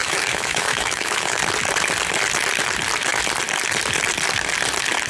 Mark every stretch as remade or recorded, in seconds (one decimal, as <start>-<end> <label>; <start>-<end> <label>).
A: 0.0-1.4 remade; 1.4-5.1 recorded